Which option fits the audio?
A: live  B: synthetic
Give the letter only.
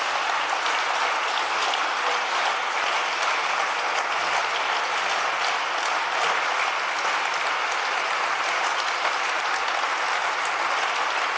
A